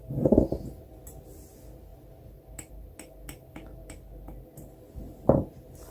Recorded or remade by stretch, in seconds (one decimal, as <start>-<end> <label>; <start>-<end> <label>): 0.0-5.9 recorded

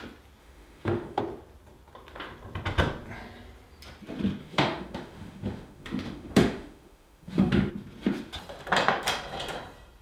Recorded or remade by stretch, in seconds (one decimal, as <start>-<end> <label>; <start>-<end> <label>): 0.0-0.4 recorded; 0.4-1.2 remade; 1.2-4.4 recorded; 4.4-7.7 remade; 7.7-10.0 recorded

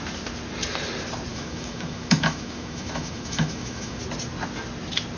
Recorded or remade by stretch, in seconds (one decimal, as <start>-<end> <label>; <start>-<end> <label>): 0.0-1.3 recorded; 1.3-4.0 remade; 4.0-5.2 recorded

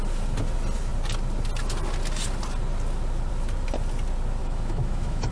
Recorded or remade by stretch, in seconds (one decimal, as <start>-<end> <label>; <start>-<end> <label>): 0.0-4.4 recorded; 4.4-5.3 remade

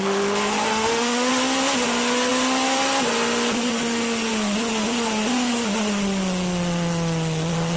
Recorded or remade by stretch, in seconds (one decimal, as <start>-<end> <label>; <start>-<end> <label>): 0.0-0.7 recorded; 0.7-1.3 remade; 1.3-7.8 recorded

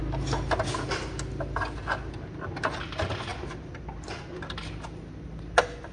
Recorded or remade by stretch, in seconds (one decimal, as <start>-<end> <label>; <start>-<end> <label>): 0.0-5.9 recorded

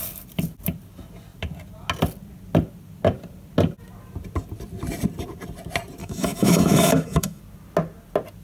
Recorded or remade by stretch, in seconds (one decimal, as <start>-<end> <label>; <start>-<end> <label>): 0.0-6.0 recorded; 6.0-7.4 remade; 7.4-8.4 recorded